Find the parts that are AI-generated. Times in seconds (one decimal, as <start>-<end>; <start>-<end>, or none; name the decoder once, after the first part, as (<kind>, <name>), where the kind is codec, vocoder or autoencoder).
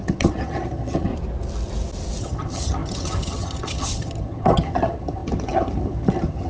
0.0-1.1 (vocoder, HiFi-GAN); 2.2-6.5